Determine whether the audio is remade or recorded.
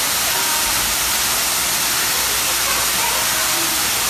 recorded